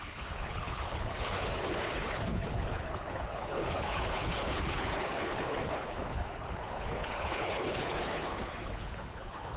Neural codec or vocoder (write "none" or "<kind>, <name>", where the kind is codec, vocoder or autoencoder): codec, HILCodec